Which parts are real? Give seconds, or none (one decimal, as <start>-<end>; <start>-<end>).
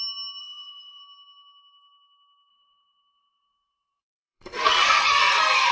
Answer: 0.0-0.4; 1.0-2.5